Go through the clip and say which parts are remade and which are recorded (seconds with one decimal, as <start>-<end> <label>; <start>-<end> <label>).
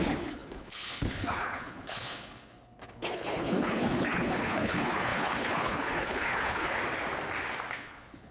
0.0-6.8 remade; 6.8-7.7 recorded; 7.7-8.3 remade